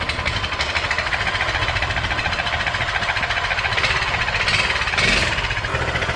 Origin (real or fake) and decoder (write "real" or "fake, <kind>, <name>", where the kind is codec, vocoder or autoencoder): real